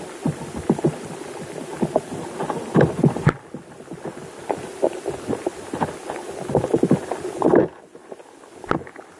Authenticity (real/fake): real